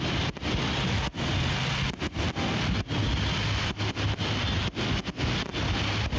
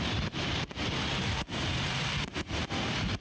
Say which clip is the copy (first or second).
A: second